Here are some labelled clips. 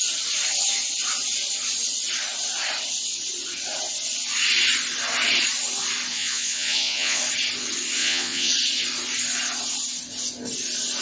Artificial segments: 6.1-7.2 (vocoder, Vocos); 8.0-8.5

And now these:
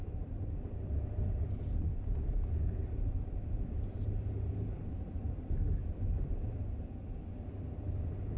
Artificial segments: 5.8-6.6 (vocoder, BigVGAN v2)

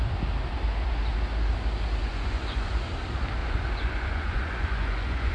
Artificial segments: 2.0-2.9 (vocoder, Vocos); 3.4-5.3

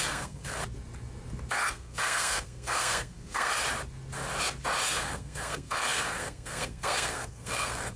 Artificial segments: 0.0-0.6 (codec, SNAC); 1.5-3.5; 4.9-8.0

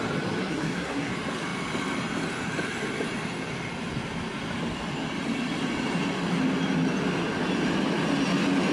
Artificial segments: 0.4-1.1 (codec, SNAC)